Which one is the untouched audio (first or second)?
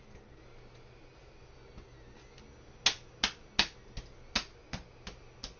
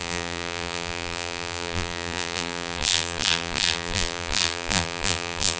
first